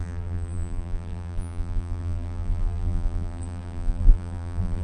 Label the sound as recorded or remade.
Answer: remade